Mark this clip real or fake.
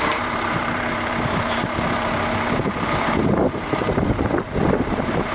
fake